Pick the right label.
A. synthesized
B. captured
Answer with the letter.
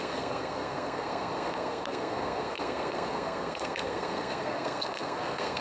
A